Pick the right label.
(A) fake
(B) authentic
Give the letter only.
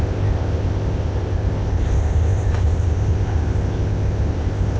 A